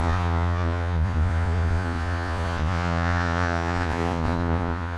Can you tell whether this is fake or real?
fake